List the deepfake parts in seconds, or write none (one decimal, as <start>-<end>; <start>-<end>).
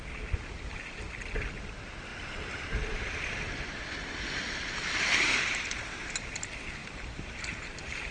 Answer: 6.8-7.4